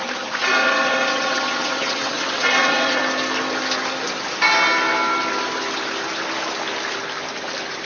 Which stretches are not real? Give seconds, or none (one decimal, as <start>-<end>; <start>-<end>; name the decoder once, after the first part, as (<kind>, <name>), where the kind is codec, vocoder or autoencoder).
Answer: 0.4-3.0 (vocoder, WaveNeXt)